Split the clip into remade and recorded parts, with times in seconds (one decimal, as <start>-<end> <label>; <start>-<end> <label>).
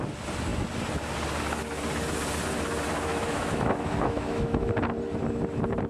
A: 0.0-3.1 recorded; 3.1-4.7 remade; 4.7-5.9 recorded